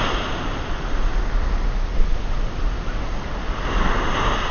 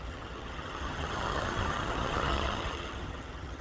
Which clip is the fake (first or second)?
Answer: second